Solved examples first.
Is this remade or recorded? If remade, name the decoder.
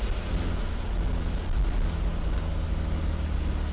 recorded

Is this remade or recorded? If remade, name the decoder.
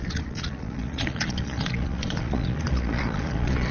remade, vocoder, Vocos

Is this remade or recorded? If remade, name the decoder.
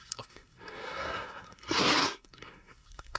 remade, codec, SNAC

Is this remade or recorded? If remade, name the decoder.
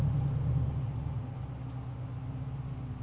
recorded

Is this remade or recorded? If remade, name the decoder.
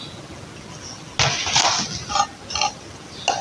recorded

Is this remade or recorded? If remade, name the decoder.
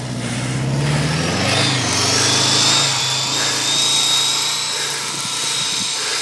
recorded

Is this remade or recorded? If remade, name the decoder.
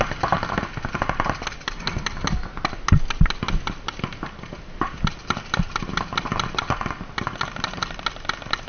recorded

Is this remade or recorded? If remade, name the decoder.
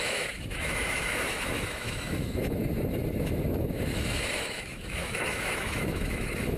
remade, autoencoder, DAC-VAE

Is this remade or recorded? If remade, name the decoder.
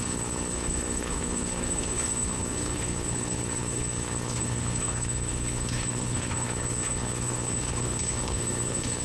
remade, codec, HILCodec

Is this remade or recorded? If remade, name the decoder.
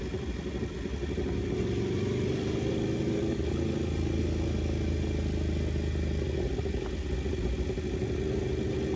recorded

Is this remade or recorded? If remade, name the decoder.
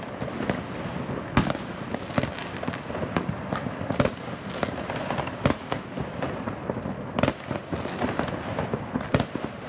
recorded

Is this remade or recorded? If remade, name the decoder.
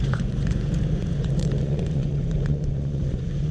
remade, vocoder, Vocos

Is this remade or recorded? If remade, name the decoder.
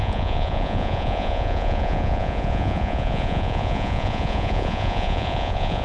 remade, vocoder, Vocos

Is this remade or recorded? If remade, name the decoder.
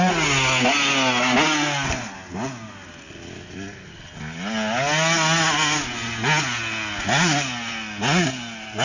recorded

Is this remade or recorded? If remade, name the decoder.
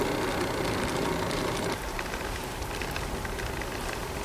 recorded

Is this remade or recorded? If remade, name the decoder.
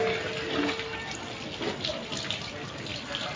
recorded